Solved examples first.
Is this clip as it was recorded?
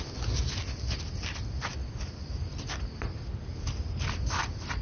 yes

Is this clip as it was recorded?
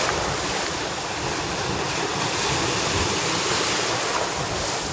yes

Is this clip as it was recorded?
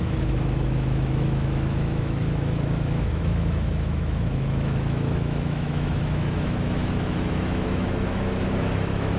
no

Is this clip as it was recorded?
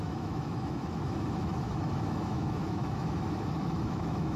no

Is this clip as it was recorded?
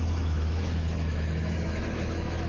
no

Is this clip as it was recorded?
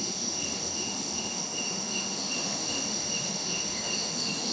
no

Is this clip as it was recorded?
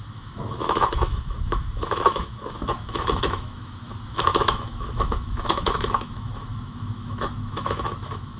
no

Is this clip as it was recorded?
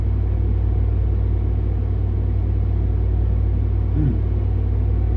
yes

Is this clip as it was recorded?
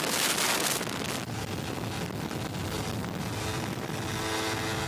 yes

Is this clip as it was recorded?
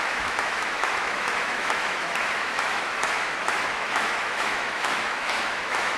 no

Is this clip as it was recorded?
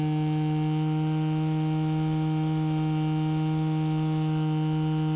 yes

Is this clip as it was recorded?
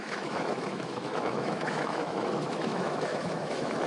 no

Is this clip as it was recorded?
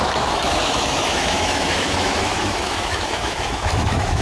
no